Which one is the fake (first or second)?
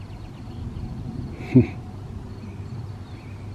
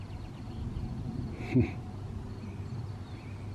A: first